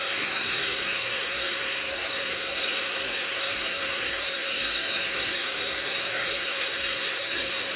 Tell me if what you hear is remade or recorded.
remade